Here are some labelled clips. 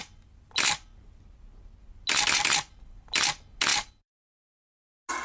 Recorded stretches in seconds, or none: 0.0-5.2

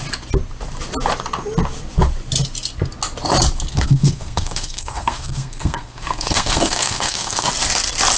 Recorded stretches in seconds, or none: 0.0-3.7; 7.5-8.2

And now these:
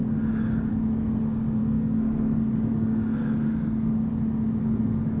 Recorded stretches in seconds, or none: 0.0-0.7; 4.1-4.6

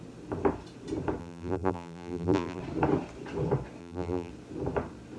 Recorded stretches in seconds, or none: 0.0-1.2; 2.6-3.8; 4.3-5.2

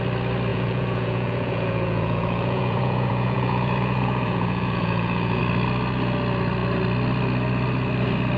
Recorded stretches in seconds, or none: 0.0-0.5; 5.4-8.4

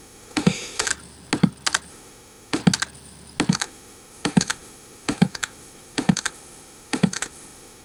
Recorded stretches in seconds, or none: 0.9-1.9; 2.6-3.5